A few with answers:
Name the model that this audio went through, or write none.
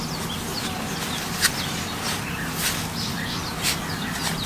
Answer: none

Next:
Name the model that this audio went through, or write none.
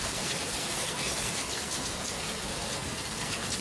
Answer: codec, SNAC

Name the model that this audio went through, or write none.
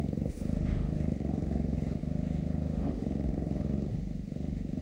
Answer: autoencoder, DAC-VAE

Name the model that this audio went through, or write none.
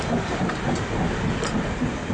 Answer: none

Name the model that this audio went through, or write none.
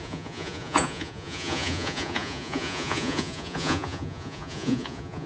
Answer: vocoder, Vocos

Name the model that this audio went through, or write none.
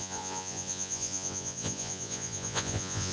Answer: vocoder, Vocos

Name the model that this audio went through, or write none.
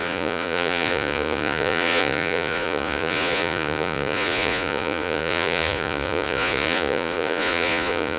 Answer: vocoder, Vocos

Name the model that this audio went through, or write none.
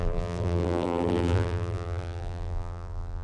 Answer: vocoder, BigVGAN v2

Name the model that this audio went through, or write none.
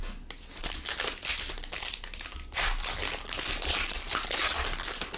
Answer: none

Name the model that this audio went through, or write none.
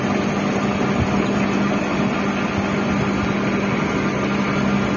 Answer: none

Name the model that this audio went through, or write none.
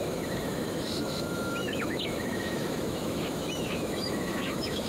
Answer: autoencoder, DAC-VAE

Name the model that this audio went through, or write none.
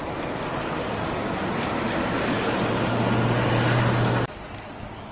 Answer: none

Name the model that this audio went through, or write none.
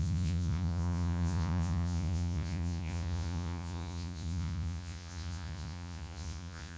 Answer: vocoder, Vocos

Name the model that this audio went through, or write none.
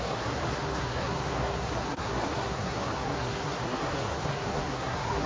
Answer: codec, SNAC